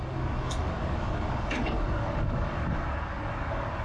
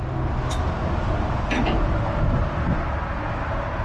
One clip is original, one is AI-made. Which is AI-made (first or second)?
first